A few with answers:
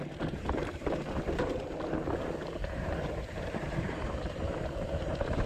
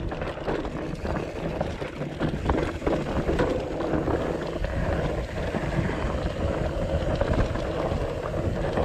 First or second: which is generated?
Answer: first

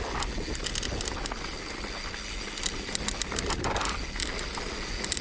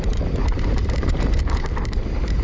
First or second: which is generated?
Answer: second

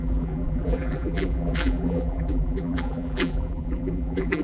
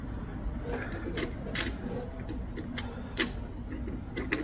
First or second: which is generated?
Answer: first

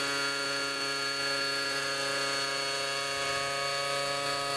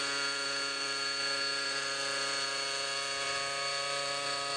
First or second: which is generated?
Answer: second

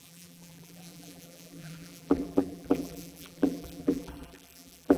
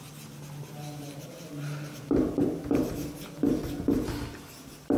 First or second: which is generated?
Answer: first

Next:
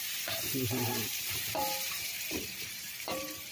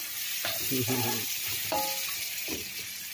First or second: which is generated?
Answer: first